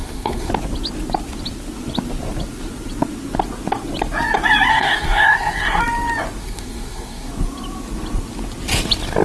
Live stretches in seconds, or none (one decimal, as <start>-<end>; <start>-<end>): 0.5-4.7; 5.8-6.4; 7.3-9.2